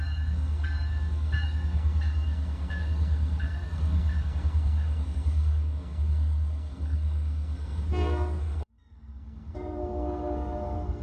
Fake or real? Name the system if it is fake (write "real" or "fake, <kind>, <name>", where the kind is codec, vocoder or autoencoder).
fake, codec, SNAC